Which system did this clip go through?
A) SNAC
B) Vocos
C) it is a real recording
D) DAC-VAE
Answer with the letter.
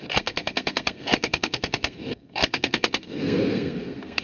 A